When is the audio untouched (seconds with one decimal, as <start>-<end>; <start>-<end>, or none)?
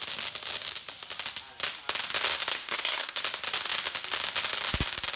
0.0-2.5; 3.2-5.2